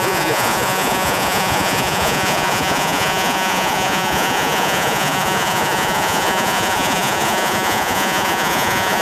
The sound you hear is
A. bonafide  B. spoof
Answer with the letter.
B